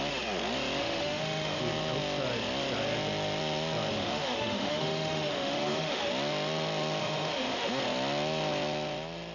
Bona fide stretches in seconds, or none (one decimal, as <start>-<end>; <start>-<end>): 0.0-0.8; 1.6-3.9; 6.1-7.0; 7.7-9.3